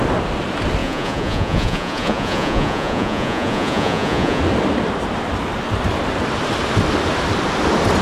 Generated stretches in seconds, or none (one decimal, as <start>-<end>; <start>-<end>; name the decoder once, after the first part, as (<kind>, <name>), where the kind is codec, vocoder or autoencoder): 0.8-4.4 (vocoder, Vocos)